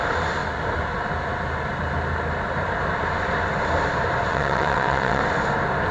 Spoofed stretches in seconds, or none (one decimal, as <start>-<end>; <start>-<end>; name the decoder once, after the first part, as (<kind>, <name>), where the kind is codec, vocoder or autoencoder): 4.3-5.2 (vocoder, WaveNeXt)